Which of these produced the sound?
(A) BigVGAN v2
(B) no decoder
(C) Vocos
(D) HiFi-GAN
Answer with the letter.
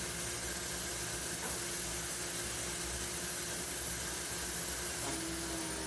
B